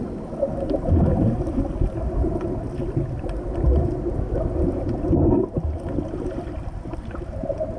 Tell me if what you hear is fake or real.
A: real